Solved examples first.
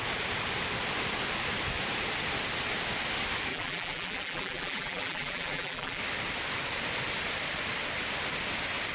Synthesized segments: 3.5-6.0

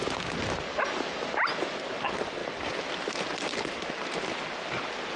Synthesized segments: 2.4-4.7